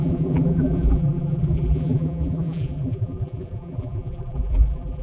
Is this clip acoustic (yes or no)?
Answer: no